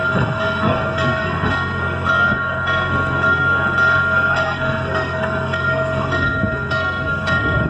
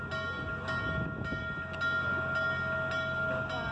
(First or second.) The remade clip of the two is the first